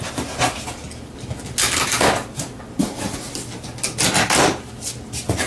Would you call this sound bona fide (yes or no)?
yes